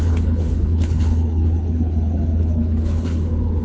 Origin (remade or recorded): remade